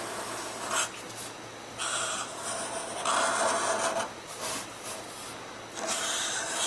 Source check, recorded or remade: recorded